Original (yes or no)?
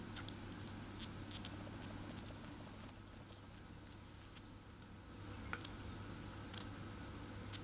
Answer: yes